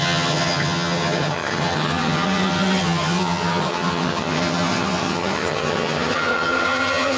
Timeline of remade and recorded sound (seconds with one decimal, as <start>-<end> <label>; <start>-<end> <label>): 0.0-7.2 remade